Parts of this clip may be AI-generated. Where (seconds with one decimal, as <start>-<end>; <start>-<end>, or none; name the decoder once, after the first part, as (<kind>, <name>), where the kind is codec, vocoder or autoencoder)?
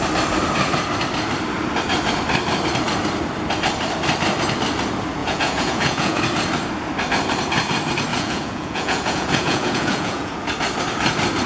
5.2-6.2 (vocoder, Vocos); 8.1-10.4